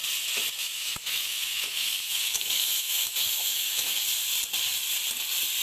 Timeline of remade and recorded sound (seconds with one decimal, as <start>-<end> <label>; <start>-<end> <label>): 0.0-0.6 recorded; 0.6-4.0 remade; 4.0-5.6 recorded